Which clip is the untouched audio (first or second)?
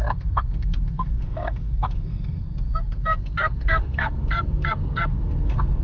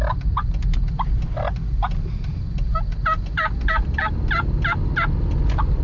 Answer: second